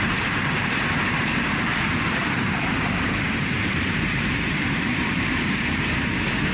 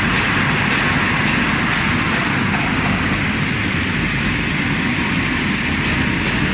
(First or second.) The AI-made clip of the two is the first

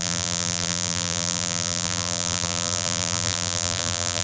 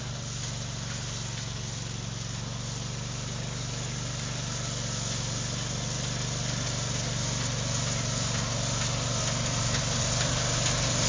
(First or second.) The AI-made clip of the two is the first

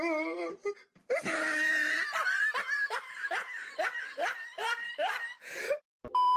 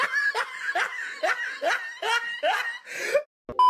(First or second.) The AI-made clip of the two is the first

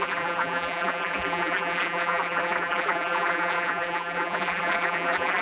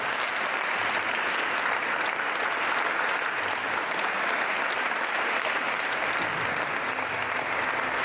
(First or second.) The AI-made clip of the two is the first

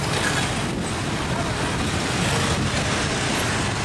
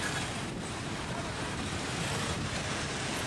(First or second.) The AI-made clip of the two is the second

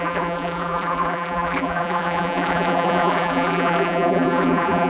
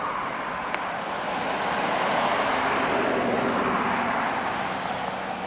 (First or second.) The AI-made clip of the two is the first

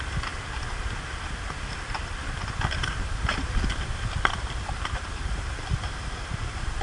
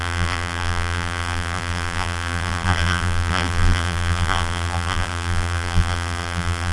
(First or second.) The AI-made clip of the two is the second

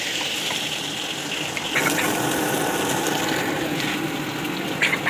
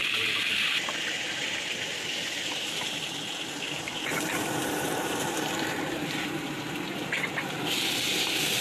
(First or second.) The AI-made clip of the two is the second